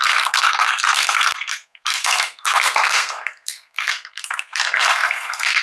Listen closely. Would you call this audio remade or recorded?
remade